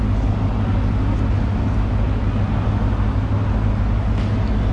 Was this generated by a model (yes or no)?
no